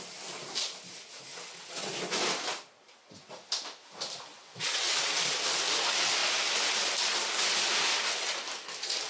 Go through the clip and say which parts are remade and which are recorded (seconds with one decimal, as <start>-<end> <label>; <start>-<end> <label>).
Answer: 0.0-1.3 recorded; 1.3-1.9 remade; 1.9-4.3 recorded; 4.3-5.1 remade; 5.1-9.1 recorded